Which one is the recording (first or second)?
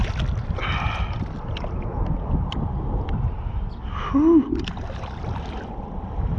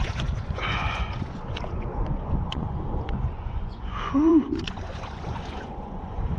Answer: first